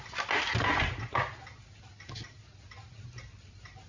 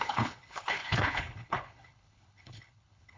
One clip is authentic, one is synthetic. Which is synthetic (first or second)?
second